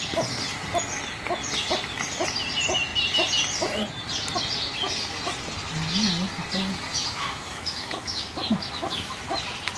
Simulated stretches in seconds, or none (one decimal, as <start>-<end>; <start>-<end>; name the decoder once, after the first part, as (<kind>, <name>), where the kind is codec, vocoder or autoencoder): 6.9-9.2 (autoencoder, DAC-VAE)

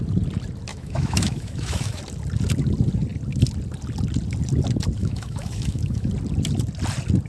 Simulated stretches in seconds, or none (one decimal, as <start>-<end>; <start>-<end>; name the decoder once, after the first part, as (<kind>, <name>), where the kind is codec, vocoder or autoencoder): 0.7-2.0 (autoencoder, DAC-VAE); 5.0-6.1

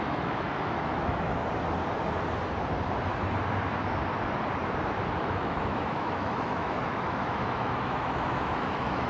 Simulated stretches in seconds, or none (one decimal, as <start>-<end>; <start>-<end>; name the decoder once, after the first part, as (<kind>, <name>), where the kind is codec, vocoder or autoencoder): 0.0-1.4 (autoencoder, DAC-VAE); 5.2-9.1